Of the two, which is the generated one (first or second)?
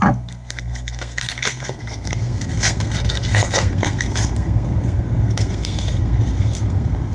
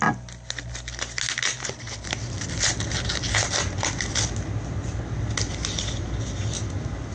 first